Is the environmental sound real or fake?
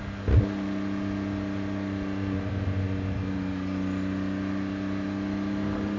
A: real